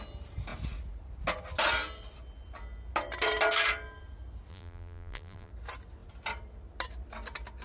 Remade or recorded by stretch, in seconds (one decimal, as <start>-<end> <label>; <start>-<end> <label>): 0.0-4.5 recorded; 4.5-5.5 remade; 5.5-7.6 recorded

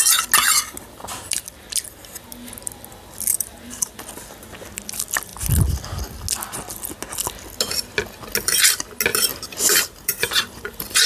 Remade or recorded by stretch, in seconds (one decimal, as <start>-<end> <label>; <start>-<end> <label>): 0.0-3.3 recorded; 3.3-4.0 remade; 4.0-9.3 recorded; 9.3-11.1 remade

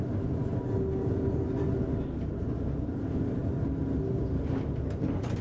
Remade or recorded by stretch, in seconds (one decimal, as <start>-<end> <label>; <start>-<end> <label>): 0.0-5.4 recorded

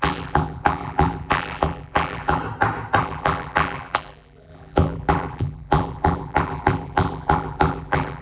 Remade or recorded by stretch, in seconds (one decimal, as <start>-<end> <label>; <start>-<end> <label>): 0.0-2.4 remade; 2.4-3.0 recorded; 3.0-8.2 remade

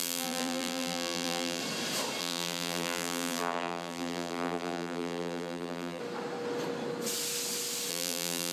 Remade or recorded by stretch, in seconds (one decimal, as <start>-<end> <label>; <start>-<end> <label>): 0.0-1.6 remade; 1.6-2.2 recorded; 2.2-6.0 remade; 6.0-7.9 recorded; 7.9-8.5 remade

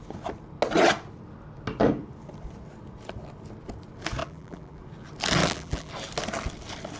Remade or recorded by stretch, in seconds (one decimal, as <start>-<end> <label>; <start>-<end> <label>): 0.0-4.2 recorded; 4.2-4.8 remade; 4.8-5.4 recorded; 5.4-5.9 remade; 5.9-7.0 recorded

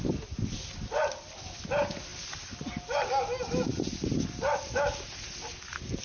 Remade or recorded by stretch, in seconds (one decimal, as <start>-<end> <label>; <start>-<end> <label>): 0.0-6.0 recorded

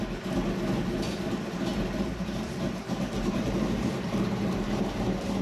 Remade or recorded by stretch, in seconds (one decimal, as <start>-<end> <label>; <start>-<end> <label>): 0.0-1.7 recorded; 1.7-4.8 remade; 4.8-5.4 recorded